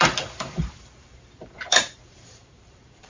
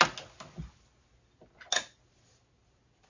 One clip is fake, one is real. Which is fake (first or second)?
first